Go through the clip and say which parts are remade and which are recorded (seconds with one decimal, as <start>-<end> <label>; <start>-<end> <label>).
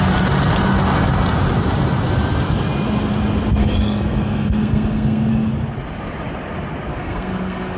0.0-3.6 recorded; 3.6-5.3 remade; 5.3-6.9 recorded; 6.9-7.8 remade